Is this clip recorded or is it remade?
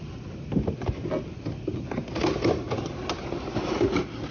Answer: recorded